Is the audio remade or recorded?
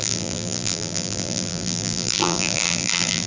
remade